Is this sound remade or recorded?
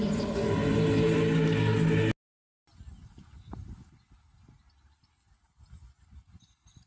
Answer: recorded